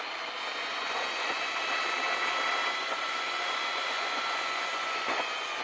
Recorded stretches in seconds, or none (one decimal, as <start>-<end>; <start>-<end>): 0.0-0.7; 1.6-2.6